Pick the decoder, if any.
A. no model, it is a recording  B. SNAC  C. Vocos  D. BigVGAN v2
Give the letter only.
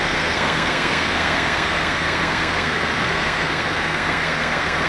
B